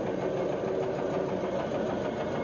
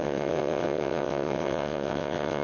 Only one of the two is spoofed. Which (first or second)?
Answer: second